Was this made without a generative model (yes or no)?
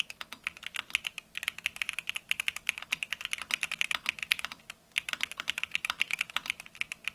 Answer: yes